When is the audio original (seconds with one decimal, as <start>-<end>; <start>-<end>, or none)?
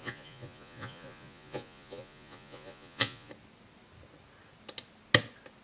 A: 3.3-5.6